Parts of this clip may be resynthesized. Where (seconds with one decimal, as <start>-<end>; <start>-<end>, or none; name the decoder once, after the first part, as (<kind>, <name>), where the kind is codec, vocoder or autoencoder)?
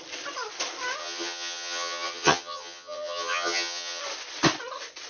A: 1.0-4.0 (vocoder, HiFi-GAN)